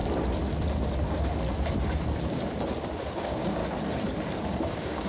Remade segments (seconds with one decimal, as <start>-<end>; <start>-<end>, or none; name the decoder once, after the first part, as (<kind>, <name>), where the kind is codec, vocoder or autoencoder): 3.1-3.6 (codec, DAC); 4.6-5.1